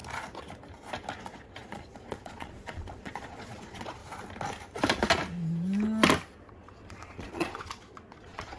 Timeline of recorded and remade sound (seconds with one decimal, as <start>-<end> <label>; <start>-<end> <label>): 0.0-1.2 recorded; 1.2-4.0 remade; 4.0-6.5 recorded; 6.5-8.6 remade